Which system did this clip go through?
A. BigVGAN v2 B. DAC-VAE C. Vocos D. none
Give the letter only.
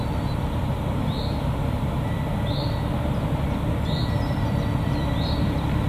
D